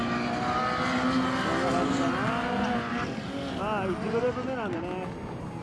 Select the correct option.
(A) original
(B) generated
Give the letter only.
A